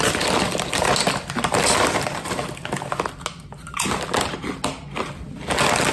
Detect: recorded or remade recorded